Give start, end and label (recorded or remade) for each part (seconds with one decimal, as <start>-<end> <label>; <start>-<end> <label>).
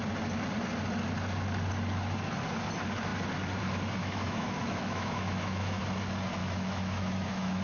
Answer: 0.0-4.0 recorded; 4.0-5.8 remade; 5.8-6.4 recorded; 6.4-7.6 remade